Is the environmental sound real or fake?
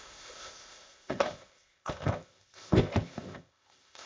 fake